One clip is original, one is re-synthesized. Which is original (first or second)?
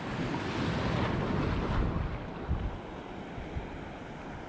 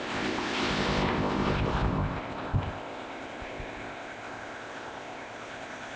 first